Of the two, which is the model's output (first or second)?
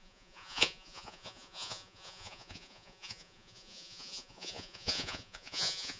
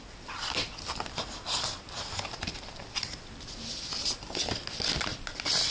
first